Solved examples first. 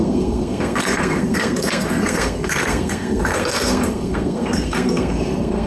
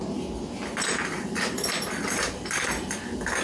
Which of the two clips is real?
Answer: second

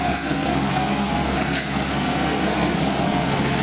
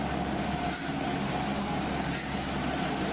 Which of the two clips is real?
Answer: second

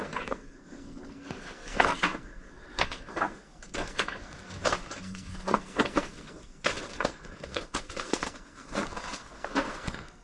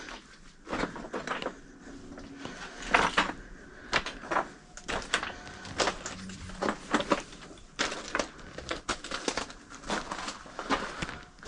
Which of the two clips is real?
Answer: second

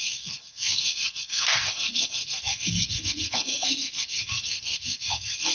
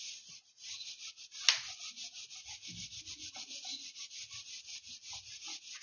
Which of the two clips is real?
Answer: second